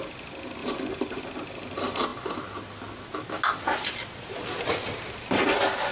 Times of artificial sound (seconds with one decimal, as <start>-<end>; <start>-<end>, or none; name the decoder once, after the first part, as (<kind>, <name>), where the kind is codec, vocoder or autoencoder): 0.6-1.2 (vocoder, BigVGAN v2)

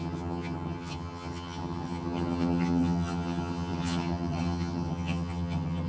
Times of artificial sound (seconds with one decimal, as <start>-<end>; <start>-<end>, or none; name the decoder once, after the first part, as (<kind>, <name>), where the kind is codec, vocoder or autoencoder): 0.0-5.9 (vocoder, HiFi-GAN)

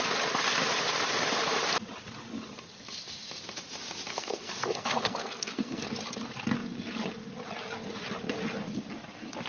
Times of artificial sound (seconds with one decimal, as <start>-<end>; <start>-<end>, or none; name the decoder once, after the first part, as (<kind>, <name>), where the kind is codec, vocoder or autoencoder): 4.1-5.9 (codec, SNAC)

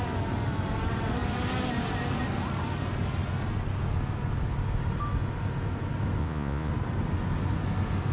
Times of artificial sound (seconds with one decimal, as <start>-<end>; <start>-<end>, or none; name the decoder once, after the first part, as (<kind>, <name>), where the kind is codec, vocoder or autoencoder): 6.2-6.7 (vocoder, Vocos)

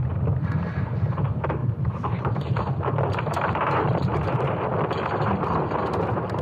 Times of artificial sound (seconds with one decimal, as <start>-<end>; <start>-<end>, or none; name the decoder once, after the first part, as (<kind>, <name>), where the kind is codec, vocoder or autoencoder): 1.6-2.8 (vocoder, BigVGAN v2); 4.1-4.7

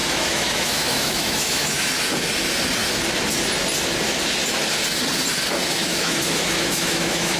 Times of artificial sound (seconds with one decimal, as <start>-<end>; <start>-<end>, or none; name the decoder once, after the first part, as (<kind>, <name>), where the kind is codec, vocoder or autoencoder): 0.0-1.9 (autoencoder, DAC-VAE); 5.9-7.4

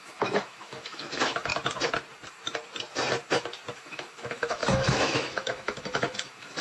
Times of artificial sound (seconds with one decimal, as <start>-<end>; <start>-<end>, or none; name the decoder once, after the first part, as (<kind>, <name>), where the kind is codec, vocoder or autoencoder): 0.0-1.5 (autoencoder, DAC-VAE); 3.7-6.6